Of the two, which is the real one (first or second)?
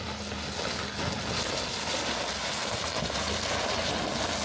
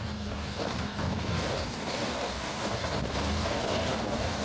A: first